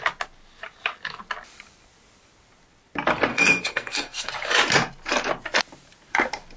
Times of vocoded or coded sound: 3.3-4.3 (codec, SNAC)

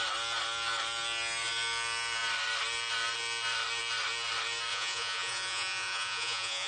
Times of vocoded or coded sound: 4.7-6.7 (vocoder, Vocos)

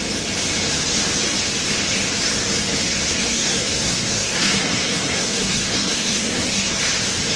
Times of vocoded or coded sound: 2.8-6.8 (codec, SNAC)

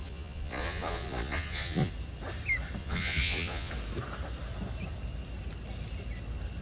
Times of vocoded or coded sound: 0.0-1.9 (vocoder, Vocos); 2.8-3.7

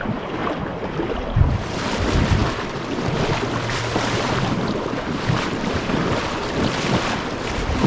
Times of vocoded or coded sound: 0.0-0.4 (vocoder, BigVGAN v2); 1.1-7.9